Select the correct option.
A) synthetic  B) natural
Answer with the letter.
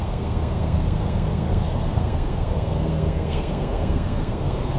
A